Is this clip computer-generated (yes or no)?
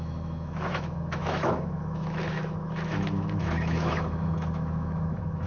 yes